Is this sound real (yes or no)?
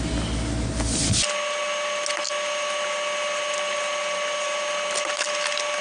yes